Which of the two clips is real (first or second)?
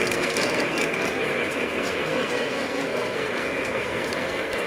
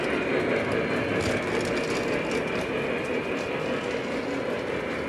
second